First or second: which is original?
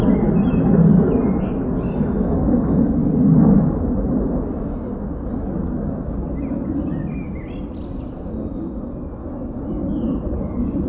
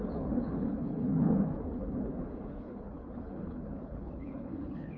first